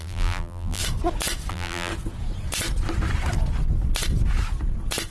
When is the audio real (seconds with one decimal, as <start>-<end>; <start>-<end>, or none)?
0.8-1.5; 1.9-5.1